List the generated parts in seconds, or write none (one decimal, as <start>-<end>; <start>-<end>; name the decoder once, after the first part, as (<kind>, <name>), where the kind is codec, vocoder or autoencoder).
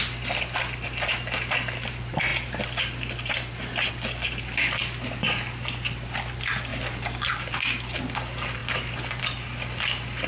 none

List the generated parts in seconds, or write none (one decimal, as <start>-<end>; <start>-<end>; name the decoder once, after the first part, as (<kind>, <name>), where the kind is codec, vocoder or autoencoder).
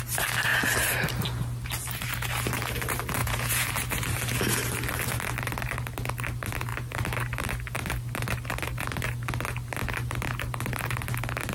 3.2-3.7 (vocoder, Vocos)